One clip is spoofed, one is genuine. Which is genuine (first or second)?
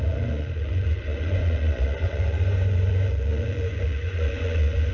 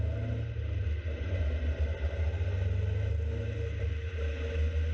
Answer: second